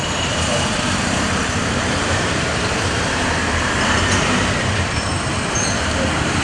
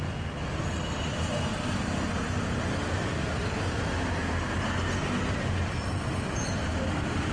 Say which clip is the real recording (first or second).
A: second